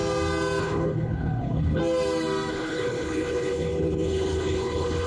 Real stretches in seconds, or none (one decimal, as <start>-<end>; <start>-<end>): 0.0-0.6; 1.8-2.5